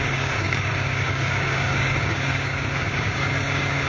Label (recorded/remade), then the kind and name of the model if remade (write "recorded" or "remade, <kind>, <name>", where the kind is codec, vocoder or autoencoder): remade, codec, DAC